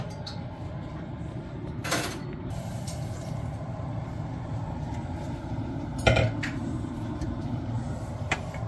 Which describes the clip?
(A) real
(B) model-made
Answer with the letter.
B